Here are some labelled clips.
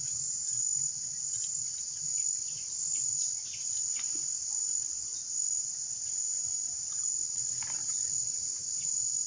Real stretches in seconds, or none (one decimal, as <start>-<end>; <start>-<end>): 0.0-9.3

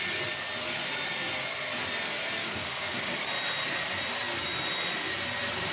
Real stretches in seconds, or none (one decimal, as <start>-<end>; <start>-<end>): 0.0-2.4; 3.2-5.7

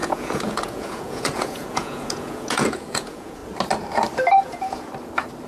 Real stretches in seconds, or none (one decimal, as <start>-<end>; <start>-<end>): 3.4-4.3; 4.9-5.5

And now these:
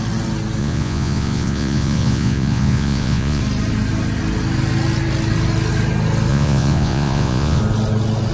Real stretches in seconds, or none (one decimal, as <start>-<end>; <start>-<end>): 0.0-0.6; 3.4-6.3; 7.6-8.3

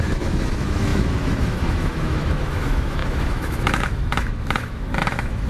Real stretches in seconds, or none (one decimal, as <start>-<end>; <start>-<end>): none

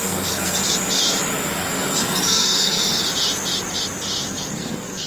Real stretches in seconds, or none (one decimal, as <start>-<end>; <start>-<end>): 0.6-1.6; 2.9-4.3

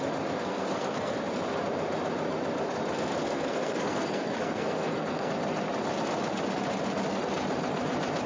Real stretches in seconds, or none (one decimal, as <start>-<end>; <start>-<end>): 0.0-0.4; 1.1-3.2; 5.3-8.3